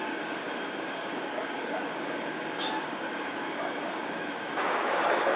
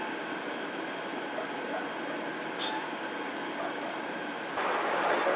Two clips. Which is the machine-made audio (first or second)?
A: first